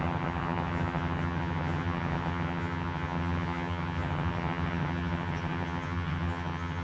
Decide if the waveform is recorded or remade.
remade